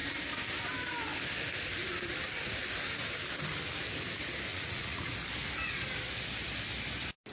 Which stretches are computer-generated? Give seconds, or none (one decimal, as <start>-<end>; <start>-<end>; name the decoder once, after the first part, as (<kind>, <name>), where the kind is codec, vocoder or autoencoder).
4.5-5.1 (vocoder, Vocos)